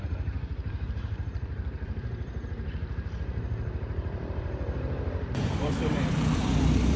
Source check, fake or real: fake